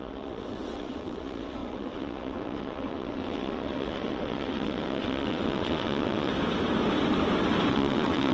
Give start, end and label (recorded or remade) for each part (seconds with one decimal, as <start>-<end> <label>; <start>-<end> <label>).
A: 0.0-6.3 remade; 6.3-7.7 recorded; 7.7-8.3 remade

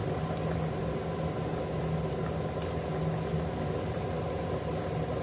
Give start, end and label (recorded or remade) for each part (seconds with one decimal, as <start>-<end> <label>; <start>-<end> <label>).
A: 0.0-5.2 recorded

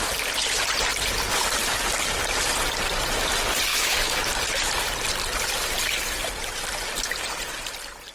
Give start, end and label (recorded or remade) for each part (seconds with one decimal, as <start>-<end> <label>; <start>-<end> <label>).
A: 0.0-3.7 recorded; 3.7-4.2 remade; 4.2-8.1 recorded

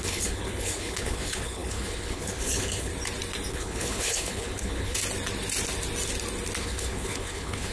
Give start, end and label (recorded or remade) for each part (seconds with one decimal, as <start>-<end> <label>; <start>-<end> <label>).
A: 0.0-2.9 remade; 2.9-3.5 recorded; 3.5-5.0 remade; 5.0-6.6 recorded; 6.6-7.7 remade

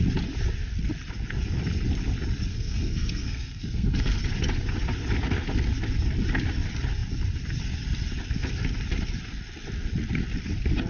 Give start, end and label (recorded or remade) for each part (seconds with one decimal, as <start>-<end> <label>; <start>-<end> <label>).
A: 0.0-2.5 recorded; 2.5-4.2 remade; 4.2-10.9 recorded